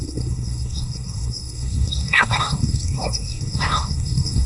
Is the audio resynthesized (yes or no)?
yes